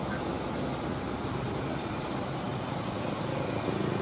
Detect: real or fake real